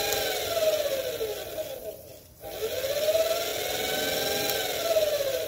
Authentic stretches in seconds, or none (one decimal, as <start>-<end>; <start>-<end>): 2.1-2.7; 3.5-4.5